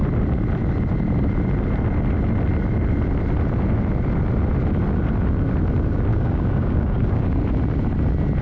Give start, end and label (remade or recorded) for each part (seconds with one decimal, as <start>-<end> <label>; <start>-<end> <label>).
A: 0.0-6.1 recorded; 6.1-7.4 remade; 7.4-8.4 recorded